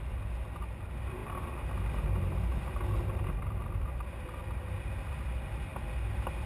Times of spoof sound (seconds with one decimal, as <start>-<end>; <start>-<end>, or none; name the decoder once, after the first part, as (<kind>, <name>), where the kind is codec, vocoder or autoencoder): none